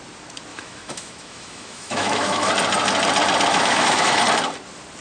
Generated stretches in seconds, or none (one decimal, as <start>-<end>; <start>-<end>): 0.5-2.5; 3.5-4.2